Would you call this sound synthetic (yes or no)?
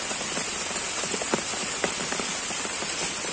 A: no